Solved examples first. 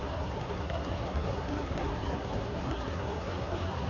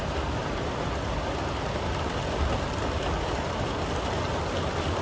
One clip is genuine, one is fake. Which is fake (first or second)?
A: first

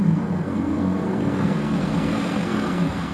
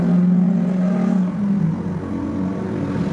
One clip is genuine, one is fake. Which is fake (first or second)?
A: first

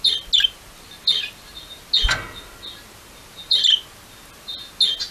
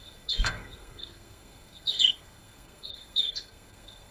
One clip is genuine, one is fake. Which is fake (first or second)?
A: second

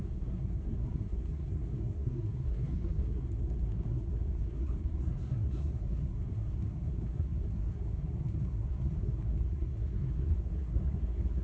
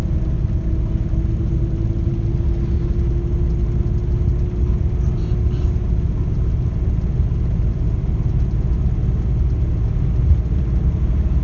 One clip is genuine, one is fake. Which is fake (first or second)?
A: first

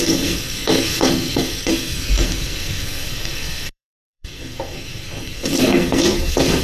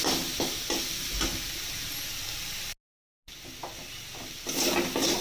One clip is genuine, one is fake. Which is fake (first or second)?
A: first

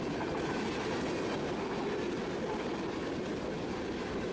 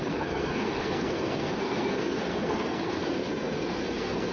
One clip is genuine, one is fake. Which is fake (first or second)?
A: second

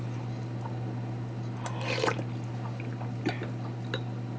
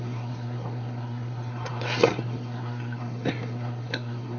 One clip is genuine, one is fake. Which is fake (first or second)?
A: second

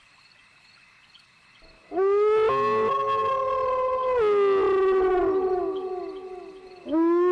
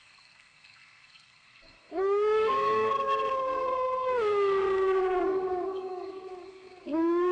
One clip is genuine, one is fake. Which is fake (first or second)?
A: second